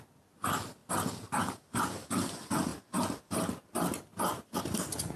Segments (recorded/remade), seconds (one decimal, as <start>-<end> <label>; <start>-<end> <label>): 0.0-5.2 recorded